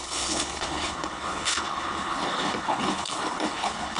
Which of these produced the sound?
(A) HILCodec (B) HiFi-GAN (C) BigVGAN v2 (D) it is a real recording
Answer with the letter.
A